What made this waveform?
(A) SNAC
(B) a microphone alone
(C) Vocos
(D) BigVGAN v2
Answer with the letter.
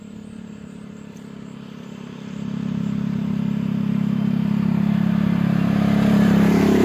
D